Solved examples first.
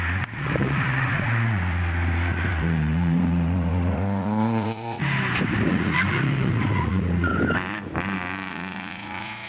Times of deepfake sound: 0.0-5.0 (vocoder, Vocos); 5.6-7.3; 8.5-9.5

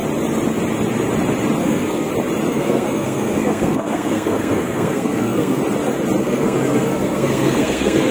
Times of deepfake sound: 1.6-2.1 (codec, SNAC); 2.5-5.6; 6.2-8.1

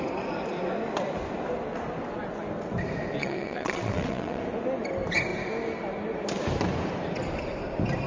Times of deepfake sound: 3.2-4.4 (vocoder, WaveNeXt)

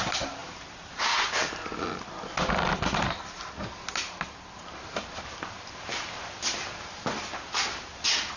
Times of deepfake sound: 0.4-1.5 (vocoder, BigVGAN v2)

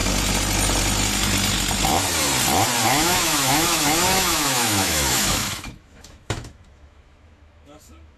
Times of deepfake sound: 2.9-8.2 (autoencoder, DAC-VAE)